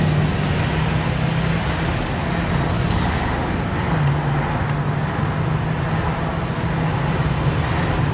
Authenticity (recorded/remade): recorded